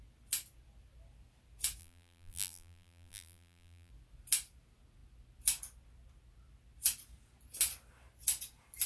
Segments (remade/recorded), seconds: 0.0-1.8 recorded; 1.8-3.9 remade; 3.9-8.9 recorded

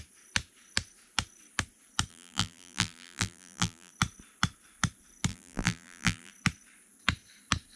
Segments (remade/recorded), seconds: 0.0-2.1 recorded; 2.1-3.9 remade; 3.9-5.3 recorded; 5.3-6.3 remade; 6.3-7.8 recorded